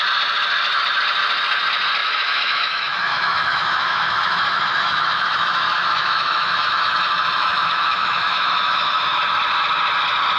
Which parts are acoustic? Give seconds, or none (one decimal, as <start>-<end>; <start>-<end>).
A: 0.0-2.0; 6.9-7.4; 9.2-10.4